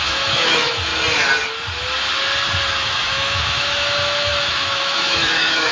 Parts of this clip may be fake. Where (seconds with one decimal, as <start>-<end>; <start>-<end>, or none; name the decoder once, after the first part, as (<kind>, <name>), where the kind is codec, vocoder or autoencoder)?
0.0-0.9 (autoencoder, DAC-VAE); 2.7-5.7

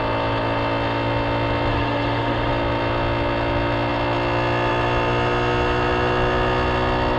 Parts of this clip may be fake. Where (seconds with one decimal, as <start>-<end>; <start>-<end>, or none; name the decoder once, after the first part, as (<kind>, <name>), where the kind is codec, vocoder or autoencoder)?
1.7-2.5 (autoencoder, DAC-VAE)

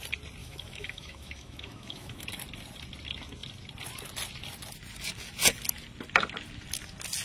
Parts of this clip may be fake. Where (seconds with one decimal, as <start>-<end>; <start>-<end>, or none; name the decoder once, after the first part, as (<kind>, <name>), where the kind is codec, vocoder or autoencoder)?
0.4-2.2 (autoencoder, DAC-VAE)

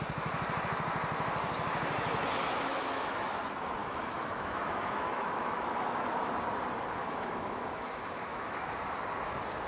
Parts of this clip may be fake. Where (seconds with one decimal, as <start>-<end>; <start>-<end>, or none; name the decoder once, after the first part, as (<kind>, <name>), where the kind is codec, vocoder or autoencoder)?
2.4-3.4 (autoencoder, DAC-VAE); 3.8-6.3; 7.0-8.7

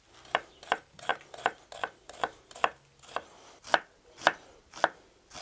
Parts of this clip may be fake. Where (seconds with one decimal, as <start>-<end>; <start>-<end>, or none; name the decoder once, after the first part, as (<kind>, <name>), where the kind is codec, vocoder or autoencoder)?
none

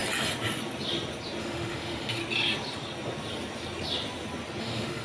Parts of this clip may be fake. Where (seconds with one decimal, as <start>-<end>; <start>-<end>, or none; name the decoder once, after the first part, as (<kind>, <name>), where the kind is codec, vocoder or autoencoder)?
1.4-2.2 (autoencoder, DAC-VAE); 4.6-5.0